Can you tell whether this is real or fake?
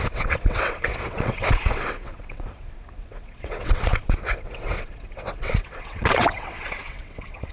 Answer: fake